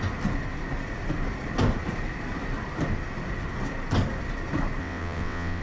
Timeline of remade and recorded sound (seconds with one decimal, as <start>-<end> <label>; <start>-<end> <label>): 0.0-4.8 recorded; 4.8-5.6 remade